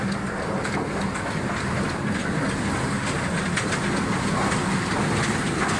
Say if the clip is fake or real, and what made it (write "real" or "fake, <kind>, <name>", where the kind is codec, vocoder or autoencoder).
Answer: real